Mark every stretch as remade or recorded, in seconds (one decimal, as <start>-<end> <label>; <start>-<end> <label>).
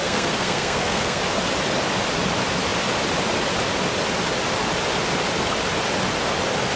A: 0.0-1.2 remade; 1.2-6.8 recorded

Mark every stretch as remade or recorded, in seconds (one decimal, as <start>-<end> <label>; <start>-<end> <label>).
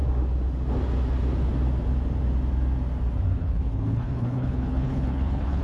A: 0.0-3.4 recorded; 3.4-5.6 remade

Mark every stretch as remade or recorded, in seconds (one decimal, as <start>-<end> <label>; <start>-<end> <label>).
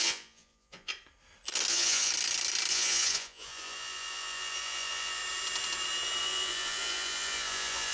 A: 0.0-0.9 remade; 0.9-1.7 recorded; 1.7-2.1 remade; 2.1-2.7 recorded; 2.7-5.2 remade; 5.2-6.2 recorded; 6.2-7.9 remade